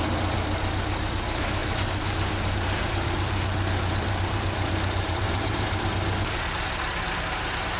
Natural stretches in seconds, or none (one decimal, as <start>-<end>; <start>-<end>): 0.0-1.6; 5.9-7.8